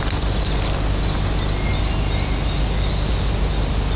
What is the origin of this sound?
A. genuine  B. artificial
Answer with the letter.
A